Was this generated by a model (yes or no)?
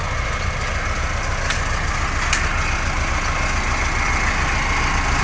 no